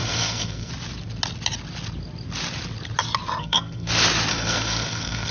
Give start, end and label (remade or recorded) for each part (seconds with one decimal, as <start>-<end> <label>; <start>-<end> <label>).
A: 0.0-0.7 remade; 0.7-3.4 recorded; 3.4-3.9 remade; 3.9-4.3 recorded; 4.3-5.3 remade